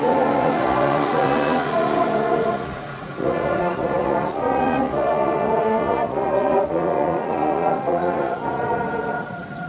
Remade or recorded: remade